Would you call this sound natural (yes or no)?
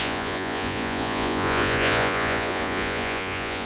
no